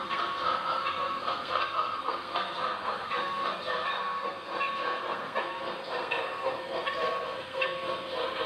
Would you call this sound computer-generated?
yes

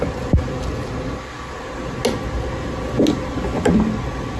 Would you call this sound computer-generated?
no